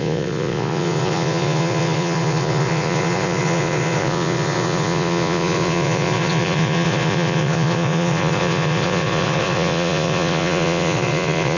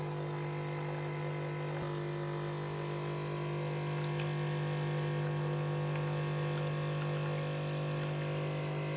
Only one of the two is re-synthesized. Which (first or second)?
first